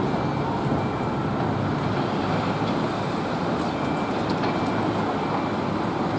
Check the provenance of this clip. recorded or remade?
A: recorded